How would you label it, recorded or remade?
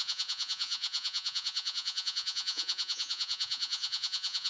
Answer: remade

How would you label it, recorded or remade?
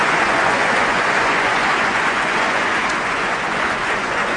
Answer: remade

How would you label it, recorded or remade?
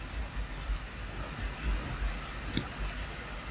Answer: recorded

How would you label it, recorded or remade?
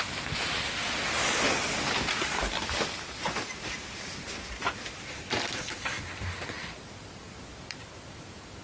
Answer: recorded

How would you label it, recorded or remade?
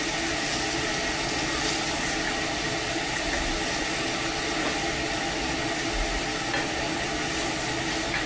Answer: recorded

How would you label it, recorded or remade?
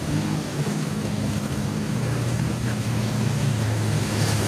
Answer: remade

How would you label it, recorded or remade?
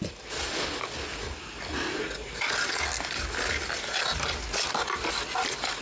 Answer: recorded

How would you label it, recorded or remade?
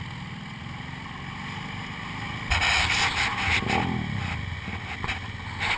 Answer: recorded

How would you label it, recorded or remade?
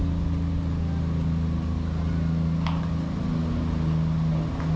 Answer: recorded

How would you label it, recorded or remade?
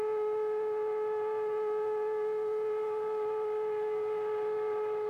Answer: recorded